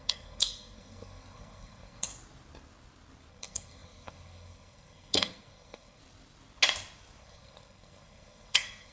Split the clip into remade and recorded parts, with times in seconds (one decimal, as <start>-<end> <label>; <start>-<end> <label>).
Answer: 0.0-2.1 remade; 2.1-3.3 recorded; 3.3-6.0 remade; 6.0-7.2 recorded; 7.2-8.9 remade